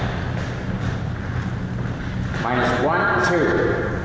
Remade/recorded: recorded